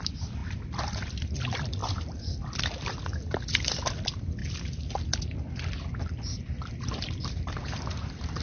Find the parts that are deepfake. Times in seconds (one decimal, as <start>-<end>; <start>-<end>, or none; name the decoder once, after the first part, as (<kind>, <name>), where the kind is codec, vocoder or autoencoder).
0.0-0.4 (vocoder, BigVGAN v2); 1.4-4.4; 5.9-8.4